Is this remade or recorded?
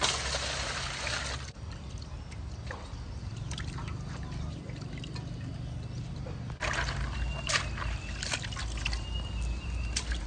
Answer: recorded